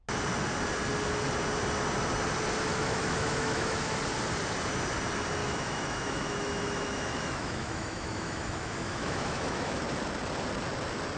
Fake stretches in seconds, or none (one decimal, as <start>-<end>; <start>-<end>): 2.7-4.0; 5.4-9.8